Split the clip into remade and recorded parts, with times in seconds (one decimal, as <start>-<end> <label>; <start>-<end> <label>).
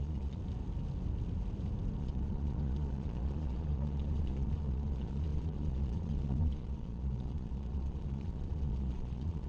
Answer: 0.0-0.4 remade; 0.4-2.0 recorded; 2.0-9.5 remade